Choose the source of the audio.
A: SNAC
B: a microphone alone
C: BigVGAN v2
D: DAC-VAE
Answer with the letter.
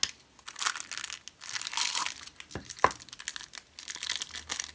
B